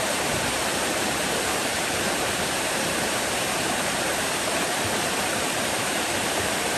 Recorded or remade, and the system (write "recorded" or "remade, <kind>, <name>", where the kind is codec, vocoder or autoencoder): remade, vocoder, BigVGAN v2